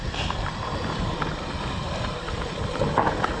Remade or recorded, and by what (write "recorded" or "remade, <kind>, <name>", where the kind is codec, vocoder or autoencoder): recorded